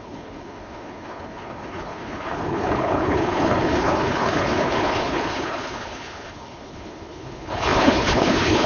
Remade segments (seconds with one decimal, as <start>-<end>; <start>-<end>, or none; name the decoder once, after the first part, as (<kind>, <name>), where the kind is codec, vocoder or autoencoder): 0.0-8.7 (codec, HILCodec)